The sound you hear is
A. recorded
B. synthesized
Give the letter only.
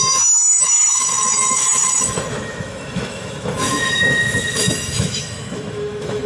B